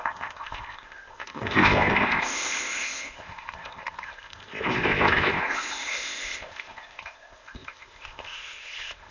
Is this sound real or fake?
fake